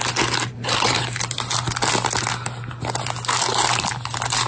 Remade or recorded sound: recorded